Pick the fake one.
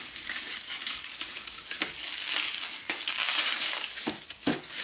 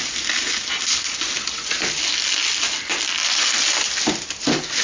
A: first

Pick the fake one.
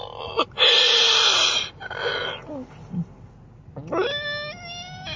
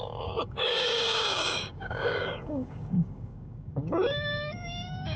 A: second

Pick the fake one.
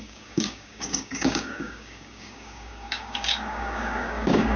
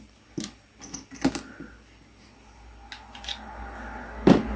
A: first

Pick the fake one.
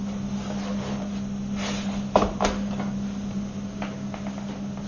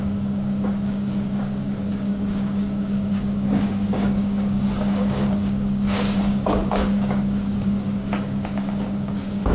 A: second